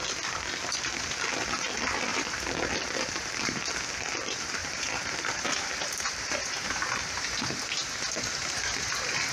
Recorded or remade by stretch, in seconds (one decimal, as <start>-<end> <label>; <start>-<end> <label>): 0.0-2.1 recorded; 2.1-3.6 remade; 3.6-4.6 recorded; 4.6-7.2 remade; 7.2-9.3 recorded